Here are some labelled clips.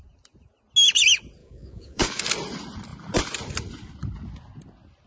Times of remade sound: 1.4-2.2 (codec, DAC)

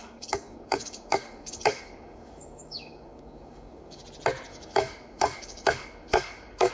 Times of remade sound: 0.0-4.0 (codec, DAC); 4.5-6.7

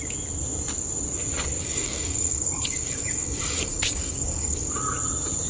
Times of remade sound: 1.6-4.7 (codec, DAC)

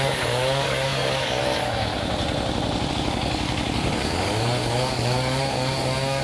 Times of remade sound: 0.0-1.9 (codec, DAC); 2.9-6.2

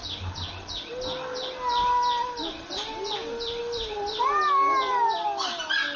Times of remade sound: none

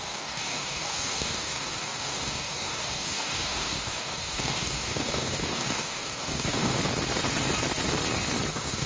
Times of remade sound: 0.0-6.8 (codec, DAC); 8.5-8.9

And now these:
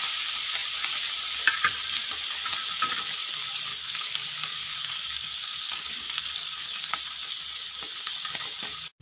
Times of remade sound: 3.7-6.9 (codec, DAC)

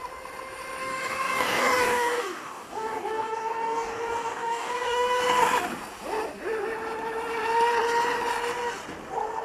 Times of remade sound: 0.8-5.2 (codec, DAC)